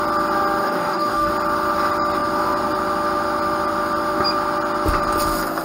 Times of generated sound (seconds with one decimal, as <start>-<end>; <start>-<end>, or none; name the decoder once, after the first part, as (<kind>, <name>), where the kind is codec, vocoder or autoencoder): 0.6-1.3 (codec, DAC)